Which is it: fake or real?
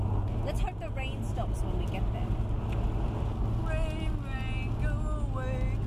real